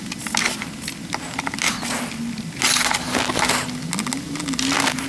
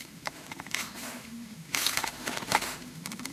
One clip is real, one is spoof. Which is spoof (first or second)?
second